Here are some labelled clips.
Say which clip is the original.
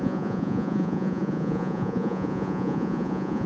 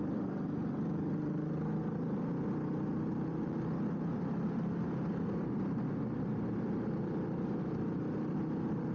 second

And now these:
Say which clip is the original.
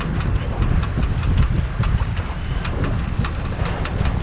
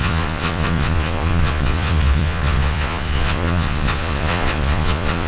first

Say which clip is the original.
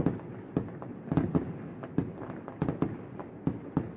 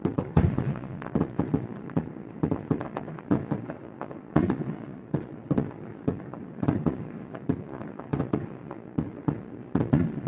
first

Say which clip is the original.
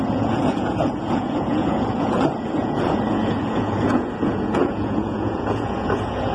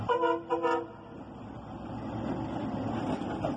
second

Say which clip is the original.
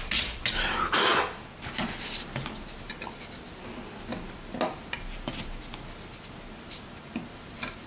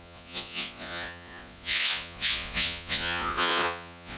first